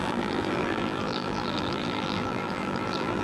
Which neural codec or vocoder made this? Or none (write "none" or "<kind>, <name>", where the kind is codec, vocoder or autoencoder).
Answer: vocoder, BigVGAN v2